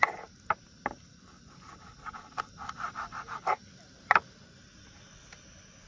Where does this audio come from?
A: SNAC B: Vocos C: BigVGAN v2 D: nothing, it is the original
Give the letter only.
D